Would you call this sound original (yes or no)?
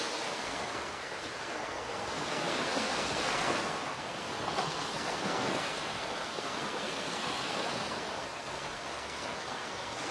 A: no